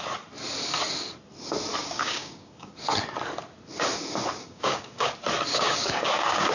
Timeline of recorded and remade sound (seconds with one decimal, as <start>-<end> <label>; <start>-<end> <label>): 0.0-1.8 recorded; 1.8-2.7 remade; 2.7-4.4 recorded; 4.4-5.1 remade; 5.1-5.5 recorded; 5.5-6.5 remade